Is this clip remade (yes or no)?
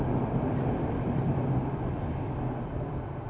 no